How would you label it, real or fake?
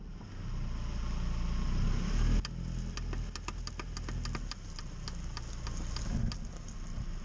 real